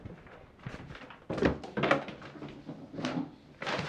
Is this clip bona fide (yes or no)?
yes